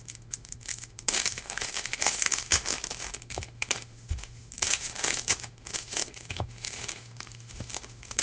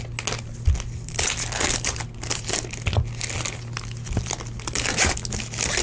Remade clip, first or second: first